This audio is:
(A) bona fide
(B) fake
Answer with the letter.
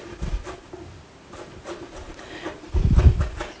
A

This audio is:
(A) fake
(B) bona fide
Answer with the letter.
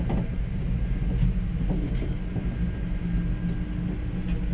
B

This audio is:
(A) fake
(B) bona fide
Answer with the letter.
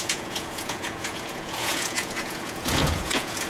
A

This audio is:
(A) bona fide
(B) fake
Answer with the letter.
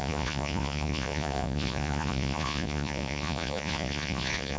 B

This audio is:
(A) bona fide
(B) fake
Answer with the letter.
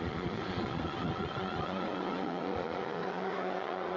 B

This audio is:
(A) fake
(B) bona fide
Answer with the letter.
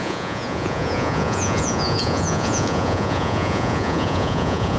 A